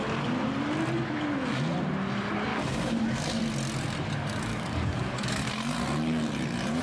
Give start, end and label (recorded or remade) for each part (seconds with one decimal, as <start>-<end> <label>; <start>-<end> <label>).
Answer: 0.0-2.5 recorded; 2.5-3.4 remade; 3.4-4.5 recorded; 4.5-5.5 remade; 5.5-6.8 recorded